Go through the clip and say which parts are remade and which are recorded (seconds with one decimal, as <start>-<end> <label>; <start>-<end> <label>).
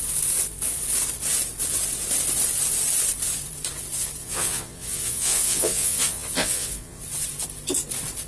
0.0-4.2 recorded; 4.2-7.0 remade; 7.0-8.3 recorded